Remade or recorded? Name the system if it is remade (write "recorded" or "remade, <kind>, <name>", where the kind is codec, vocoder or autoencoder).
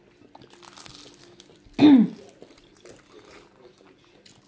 recorded